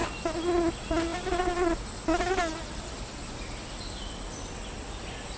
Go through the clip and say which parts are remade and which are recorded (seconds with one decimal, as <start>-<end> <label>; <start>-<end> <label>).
0.0-5.4 recorded